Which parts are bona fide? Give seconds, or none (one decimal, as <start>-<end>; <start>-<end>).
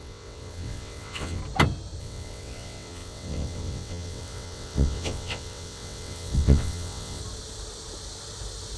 1.4-2.0; 7.2-8.8